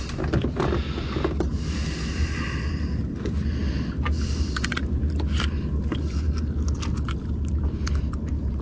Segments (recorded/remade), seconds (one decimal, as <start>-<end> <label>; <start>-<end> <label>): 0.0-8.6 recorded